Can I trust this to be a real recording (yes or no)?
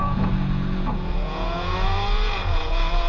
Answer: no